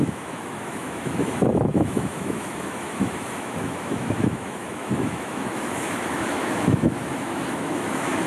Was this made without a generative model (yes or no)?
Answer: no